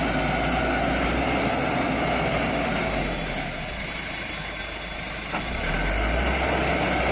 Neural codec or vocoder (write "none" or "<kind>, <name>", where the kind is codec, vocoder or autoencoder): none